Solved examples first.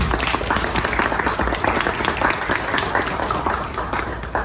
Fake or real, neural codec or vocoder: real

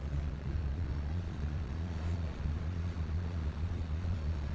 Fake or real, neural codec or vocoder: fake, vocoder, Vocos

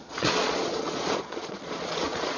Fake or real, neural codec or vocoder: fake, vocoder, Vocos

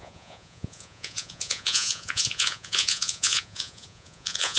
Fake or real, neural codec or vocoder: fake, vocoder, Vocos